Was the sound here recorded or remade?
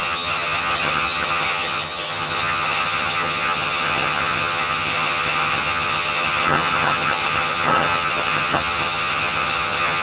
remade